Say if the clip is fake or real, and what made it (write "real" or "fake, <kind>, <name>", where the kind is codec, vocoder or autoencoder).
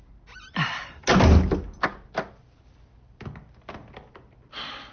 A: real